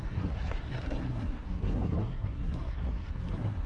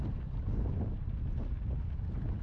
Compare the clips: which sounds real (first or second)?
second